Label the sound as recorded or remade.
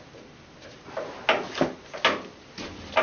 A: recorded